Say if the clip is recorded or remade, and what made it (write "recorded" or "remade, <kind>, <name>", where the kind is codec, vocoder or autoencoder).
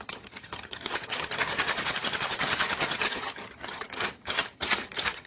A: remade, vocoder, HiFi-GAN